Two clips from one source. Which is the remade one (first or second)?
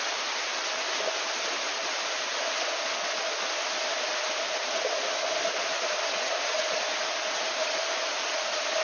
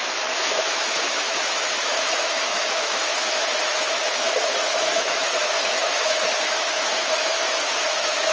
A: second